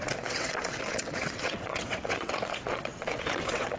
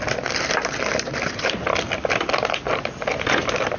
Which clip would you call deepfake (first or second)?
first